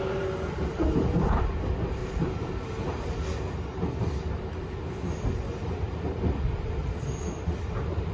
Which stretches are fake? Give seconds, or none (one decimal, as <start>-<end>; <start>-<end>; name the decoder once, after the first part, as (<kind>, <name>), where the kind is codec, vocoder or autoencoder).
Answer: 0.0-2.0 (vocoder, BigVGAN v2); 3.5-6.8; 7.3-8.1